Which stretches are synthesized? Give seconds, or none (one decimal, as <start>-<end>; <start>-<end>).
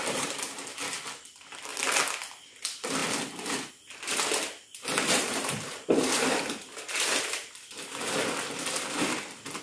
4.6-7.0